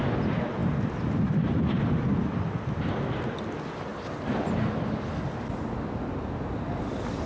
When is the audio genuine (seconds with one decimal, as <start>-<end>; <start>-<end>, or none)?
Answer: 0.0-7.3